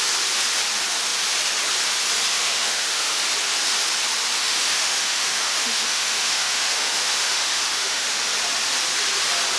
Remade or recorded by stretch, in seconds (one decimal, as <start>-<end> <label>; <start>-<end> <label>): 0.0-2.3 recorded; 2.3-3.2 remade; 3.2-4.4 recorded; 4.4-8.2 remade; 8.2-9.6 recorded